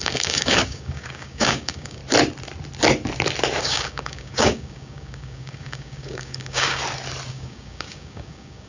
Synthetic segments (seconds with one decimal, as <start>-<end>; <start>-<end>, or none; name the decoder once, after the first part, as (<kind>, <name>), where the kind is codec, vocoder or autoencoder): 0.0-2.0 (codec, DAC); 3.6-6.8; 7.3-8.7